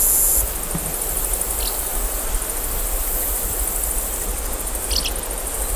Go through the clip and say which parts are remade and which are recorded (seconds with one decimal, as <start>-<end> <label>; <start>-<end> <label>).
0.0-5.8 recorded